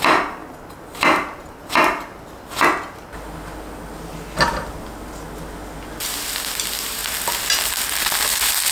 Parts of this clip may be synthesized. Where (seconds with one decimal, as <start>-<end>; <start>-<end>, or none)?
none